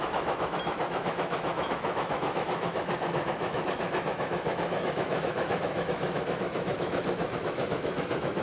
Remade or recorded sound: remade